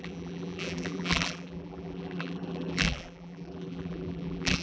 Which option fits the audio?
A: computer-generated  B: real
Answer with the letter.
A